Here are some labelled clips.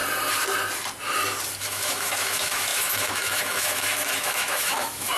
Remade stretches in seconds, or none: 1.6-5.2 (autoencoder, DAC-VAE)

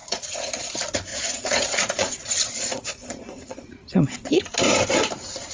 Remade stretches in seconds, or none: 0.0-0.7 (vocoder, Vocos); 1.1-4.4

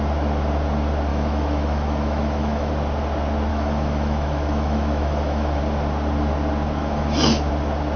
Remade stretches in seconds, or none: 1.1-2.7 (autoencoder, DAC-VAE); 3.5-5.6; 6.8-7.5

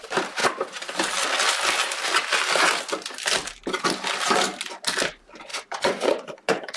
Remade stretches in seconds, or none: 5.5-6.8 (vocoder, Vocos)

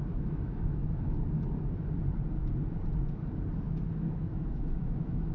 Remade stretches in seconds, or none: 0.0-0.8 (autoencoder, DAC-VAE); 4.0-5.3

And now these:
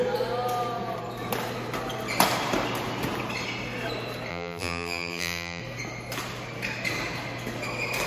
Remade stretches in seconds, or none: 4.3-5.6 (vocoder, BigVGAN v2)